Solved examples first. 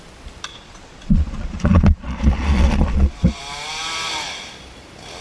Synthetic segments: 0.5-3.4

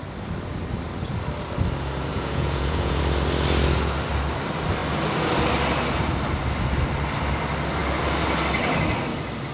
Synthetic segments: 2.1-3.0

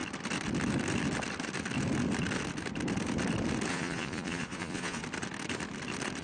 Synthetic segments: 3.7-5.0

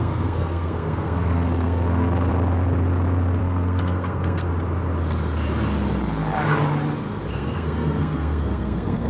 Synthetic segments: 0.0-2.3; 3.4-4.5; 7.3-9.1

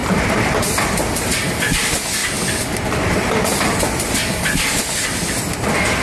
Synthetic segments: 0.0-1.0; 2.2-5.3